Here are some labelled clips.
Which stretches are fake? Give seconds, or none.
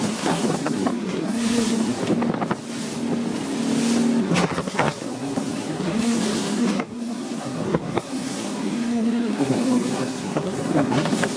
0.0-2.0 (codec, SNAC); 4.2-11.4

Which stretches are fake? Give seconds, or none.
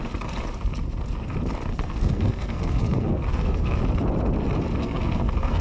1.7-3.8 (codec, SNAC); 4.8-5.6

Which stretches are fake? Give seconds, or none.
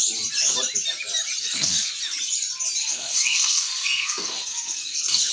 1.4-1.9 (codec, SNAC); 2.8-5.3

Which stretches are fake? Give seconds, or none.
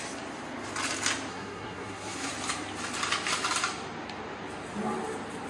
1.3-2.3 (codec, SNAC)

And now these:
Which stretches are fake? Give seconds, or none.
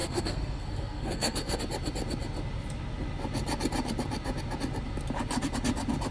0.0-1.6 (codec, SNAC)